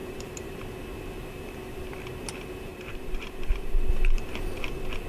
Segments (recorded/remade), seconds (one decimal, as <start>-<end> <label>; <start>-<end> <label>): 0.0-0.6 remade; 0.6-2.7 recorded; 2.7-3.9 remade; 3.9-5.1 recorded